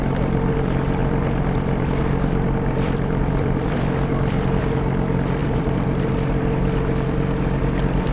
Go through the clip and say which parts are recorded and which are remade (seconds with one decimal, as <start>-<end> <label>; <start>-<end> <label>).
0.0-1.0 recorded; 1.0-4.6 remade; 4.6-5.4 recorded; 5.4-6.1 remade; 6.1-8.1 recorded